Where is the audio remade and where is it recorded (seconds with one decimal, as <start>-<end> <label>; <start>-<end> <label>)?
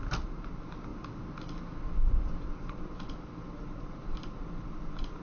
0.0-0.9 remade; 0.9-2.4 recorded; 2.4-5.2 remade